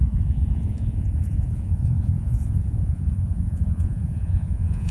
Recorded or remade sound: remade